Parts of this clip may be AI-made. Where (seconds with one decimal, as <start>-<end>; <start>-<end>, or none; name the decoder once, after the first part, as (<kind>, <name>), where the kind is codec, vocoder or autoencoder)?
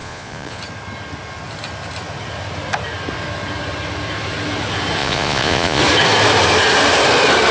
0.0-0.6 (vocoder, Vocos); 5.0-5.8